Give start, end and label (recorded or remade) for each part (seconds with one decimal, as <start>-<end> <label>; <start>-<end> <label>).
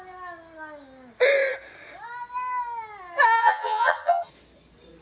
0.0-3.4 recorded; 3.4-4.3 remade; 4.3-5.0 recorded